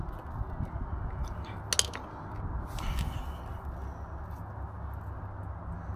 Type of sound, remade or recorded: recorded